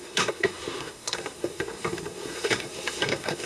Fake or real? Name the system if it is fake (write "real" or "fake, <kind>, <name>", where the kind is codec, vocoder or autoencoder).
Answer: fake, codec, SNAC